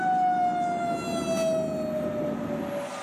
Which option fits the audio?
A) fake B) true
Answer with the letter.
B